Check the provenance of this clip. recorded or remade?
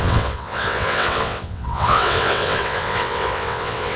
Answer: remade